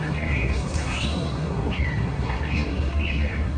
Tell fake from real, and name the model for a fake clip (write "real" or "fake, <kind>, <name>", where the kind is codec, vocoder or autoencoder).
fake, codec, SNAC